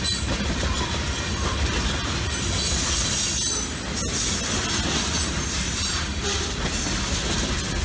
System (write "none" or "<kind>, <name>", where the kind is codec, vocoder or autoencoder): none